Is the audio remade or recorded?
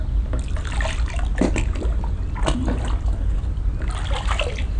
recorded